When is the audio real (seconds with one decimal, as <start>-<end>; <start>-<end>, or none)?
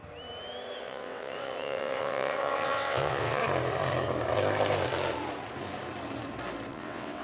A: 0.0-0.8; 3.4-6.7